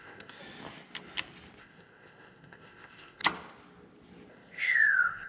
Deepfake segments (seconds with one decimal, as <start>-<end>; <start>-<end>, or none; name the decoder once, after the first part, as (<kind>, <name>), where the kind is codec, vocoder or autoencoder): 0.0-0.4 (codec, ZipCodec); 1.6-3.2; 4.3-5.3

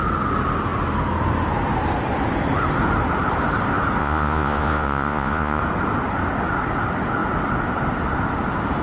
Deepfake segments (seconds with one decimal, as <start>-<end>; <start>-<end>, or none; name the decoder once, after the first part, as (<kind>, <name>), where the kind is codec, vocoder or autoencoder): 4.0-5.6 (vocoder, Vocos)

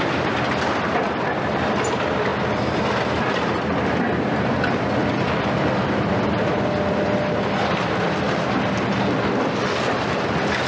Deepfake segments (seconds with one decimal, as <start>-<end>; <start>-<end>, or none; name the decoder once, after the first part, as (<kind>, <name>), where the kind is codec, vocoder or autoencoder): none

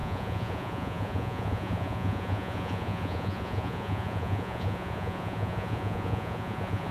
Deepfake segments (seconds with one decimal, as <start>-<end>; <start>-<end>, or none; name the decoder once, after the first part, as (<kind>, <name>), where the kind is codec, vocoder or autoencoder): 0.0-6.9 (vocoder, Vocos)

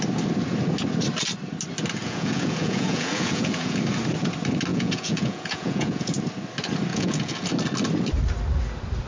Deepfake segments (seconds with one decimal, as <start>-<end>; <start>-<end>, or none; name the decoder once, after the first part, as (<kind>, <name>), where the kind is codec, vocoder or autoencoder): 2.0-3.8 (vocoder, Vocos); 4.7-6.1; 6.9-7.5

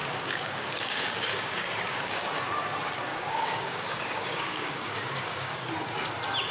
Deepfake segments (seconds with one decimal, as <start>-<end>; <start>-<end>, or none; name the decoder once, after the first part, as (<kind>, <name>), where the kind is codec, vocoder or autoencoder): 0.0-2.3 (codec, DAC); 3.1-5.7

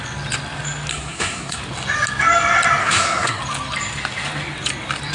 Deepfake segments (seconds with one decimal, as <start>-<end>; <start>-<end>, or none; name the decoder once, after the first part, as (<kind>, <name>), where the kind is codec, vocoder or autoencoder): 0.9-1.6 (codec, SNAC); 2.8-3.4

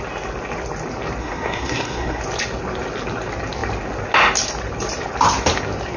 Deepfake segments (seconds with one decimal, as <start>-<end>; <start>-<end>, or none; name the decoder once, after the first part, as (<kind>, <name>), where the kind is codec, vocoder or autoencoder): 1.2-2.2 (codec, SNAC)